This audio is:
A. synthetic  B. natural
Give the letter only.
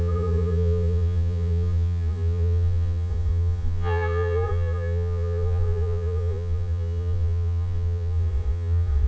A